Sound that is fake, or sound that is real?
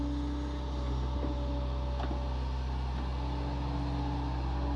real